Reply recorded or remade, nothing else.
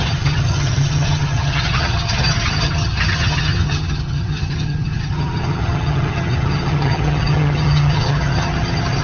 remade